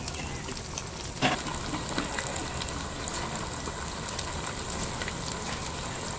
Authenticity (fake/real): real